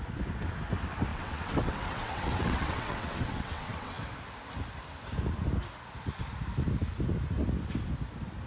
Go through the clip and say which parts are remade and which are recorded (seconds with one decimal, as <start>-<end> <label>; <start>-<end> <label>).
0.0-1.1 recorded; 1.1-4.0 remade; 4.0-8.5 recorded